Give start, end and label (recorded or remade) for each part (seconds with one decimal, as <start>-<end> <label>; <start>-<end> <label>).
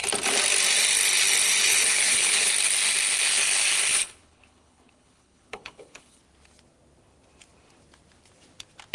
0.0-1.6 recorded; 1.6-2.5 remade; 2.5-3.9 recorded; 3.9-6.2 remade; 6.2-8.9 recorded